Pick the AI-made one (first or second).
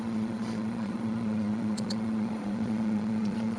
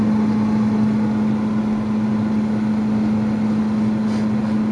first